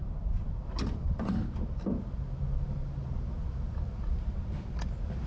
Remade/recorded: recorded